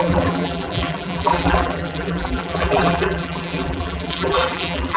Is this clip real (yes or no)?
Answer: no